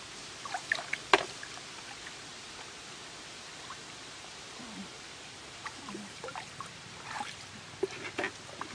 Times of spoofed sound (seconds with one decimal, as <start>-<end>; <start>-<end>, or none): 2.3-7.2